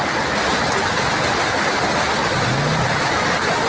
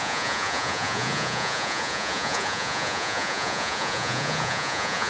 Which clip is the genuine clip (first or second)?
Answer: first